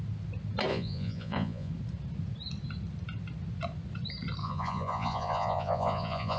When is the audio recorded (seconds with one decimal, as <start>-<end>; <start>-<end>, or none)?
0.0-0.7; 1.7-4.4

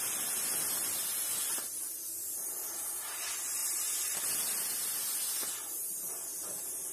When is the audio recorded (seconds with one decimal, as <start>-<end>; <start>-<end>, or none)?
0.0-6.9

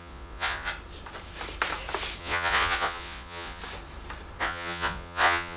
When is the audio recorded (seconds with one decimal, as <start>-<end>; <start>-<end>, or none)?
0.7-2.2; 3.6-4.4

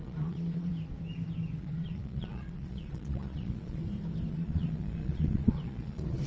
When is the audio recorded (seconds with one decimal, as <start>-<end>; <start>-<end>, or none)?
0.7-1.6; 3.8-4.3

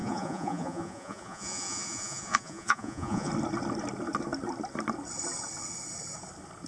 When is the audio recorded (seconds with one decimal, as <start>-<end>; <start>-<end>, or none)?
3.3-6.7

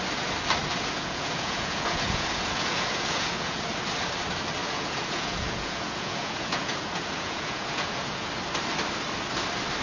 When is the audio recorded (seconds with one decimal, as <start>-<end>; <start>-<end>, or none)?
0.0-0.7; 3.7-4.6; 8.3-9.8